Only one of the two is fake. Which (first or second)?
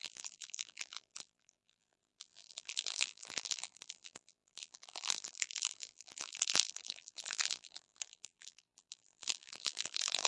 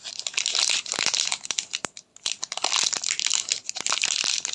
first